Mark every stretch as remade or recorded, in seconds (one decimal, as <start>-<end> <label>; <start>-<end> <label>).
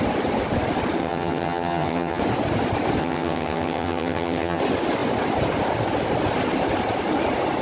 0.0-1.0 recorded; 1.0-2.2 remade; 2.2-3.0 recorded; 3.0-4.6 remade; 4.6-7.6 recorded